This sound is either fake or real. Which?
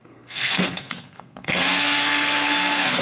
fake